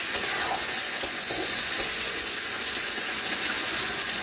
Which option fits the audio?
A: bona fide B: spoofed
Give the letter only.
B